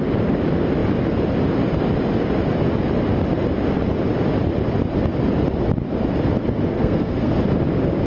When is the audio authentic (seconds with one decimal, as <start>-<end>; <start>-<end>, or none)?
0.0-6.7; 7.3-8.1